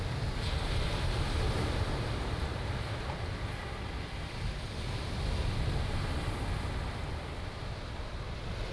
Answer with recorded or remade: recorded